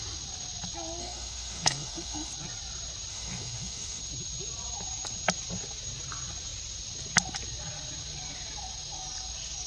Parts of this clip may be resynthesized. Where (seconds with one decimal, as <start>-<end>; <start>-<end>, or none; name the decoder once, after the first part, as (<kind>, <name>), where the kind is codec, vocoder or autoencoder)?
1.0-2.3 (autoencoder, DAC-VAE); 3.1-4.0